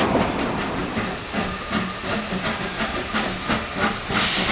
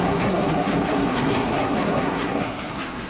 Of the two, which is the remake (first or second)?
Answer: second